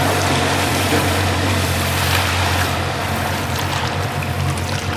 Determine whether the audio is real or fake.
real